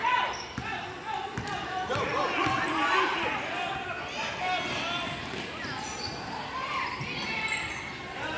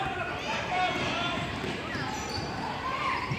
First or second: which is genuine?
first